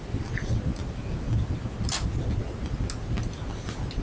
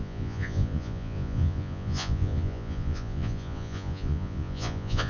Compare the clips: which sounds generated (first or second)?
second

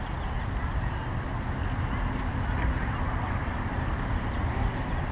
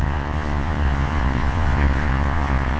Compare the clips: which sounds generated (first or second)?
second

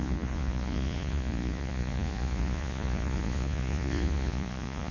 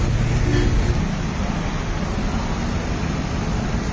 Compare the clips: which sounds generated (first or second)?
first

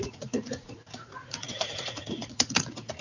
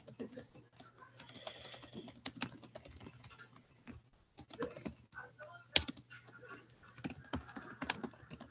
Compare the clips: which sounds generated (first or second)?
first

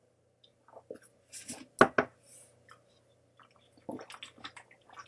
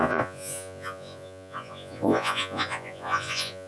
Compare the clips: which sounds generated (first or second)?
second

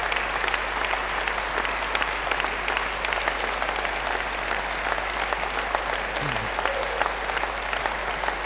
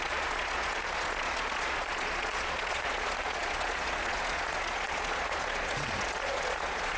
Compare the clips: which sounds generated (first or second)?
second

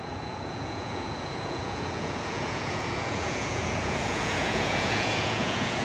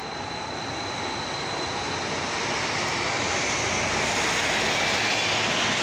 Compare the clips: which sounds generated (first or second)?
first